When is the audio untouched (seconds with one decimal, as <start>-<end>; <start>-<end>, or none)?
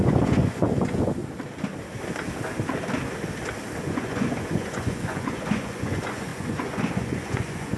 1.2-3.8